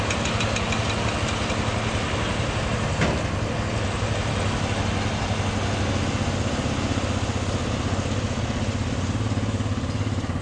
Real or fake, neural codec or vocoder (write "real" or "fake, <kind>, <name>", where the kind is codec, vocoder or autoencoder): real